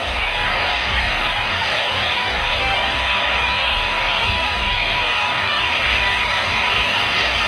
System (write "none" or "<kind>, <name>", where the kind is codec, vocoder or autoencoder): codec, DAC